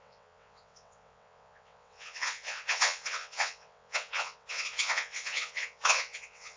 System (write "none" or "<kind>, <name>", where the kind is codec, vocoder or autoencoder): vocoder, WaveNeXt